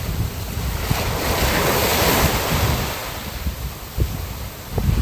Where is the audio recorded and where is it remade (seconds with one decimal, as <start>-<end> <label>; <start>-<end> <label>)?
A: 0.0-5.0 recorded